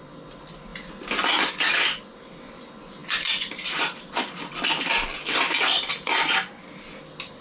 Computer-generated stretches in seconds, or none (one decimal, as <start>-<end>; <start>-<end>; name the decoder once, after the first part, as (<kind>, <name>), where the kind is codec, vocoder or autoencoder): none